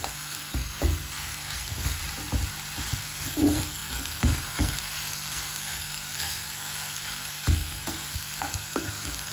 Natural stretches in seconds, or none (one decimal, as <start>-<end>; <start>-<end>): 2.0-2.9